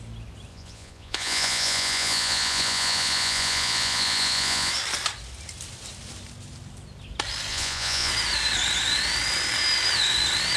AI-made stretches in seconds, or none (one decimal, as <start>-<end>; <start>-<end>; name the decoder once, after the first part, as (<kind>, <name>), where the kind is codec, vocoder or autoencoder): 0.5-4.7 (vocoder, Vocos); 7.5-8.1